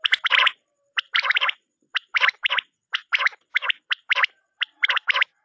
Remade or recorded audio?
remade